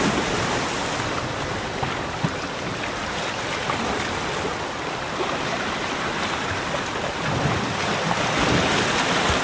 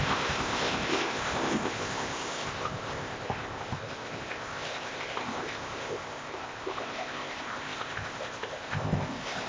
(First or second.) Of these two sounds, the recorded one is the first